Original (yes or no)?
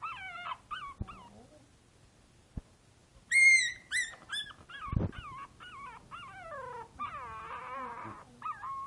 yes